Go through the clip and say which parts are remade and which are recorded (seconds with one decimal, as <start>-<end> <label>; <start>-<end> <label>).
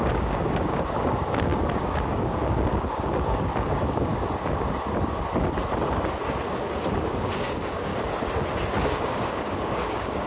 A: 0.0-4.1 remade; 4.1-7.1 recorded; 7.1-7.9 remade; 7.9-8.9 recorded; 8.9-10.3 remade